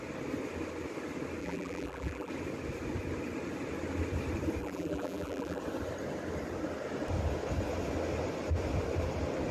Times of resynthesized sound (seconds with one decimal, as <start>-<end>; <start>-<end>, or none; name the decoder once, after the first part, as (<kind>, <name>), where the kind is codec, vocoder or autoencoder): 1.4-2.3 (vocoder, BigVGAN v2); 4.6-5.6